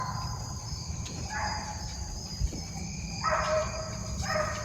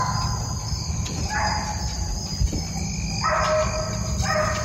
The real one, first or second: second